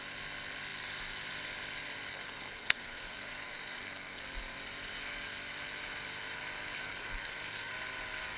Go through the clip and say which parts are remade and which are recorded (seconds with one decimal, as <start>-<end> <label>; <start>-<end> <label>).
0.0-2.1 recorded; 2.1-4.2 remade; 4.2-6.8 recorded; 6.8-7.7 remade; 7.7-8.4 recorded